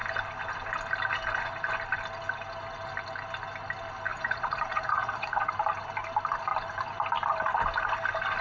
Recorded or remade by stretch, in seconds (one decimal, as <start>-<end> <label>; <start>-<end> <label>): 0.0-4.1 recorded; 4.1-5.5 remade; 5.5-8.4 recorded